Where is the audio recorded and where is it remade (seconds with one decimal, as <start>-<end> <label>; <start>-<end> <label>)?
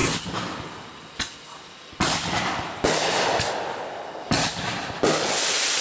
0.0-5.8 recorded